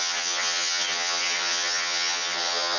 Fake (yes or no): yes